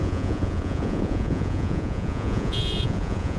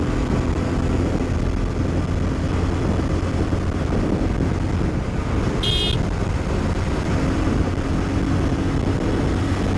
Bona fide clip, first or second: second